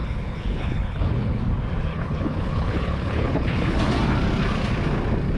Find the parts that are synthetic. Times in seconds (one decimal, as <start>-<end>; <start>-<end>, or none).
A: 0.0-1.4; 1.9-3.8